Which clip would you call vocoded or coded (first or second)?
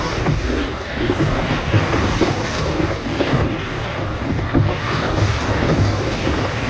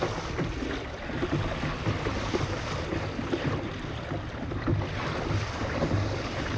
first